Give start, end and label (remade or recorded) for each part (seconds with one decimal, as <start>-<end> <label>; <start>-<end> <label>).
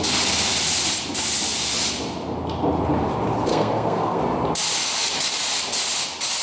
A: 0.0-3.5 recorded; 3.5-4.2 remade; 4.2-6.4 recorded